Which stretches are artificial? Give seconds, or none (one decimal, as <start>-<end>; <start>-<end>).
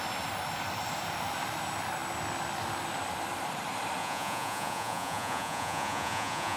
4.0-6.6